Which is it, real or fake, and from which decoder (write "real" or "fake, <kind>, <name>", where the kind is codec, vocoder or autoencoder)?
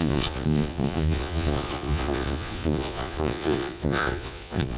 fake, vocoder, Vocos